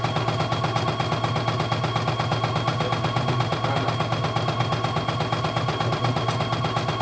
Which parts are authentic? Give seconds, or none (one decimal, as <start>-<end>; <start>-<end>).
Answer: 0.0-7.0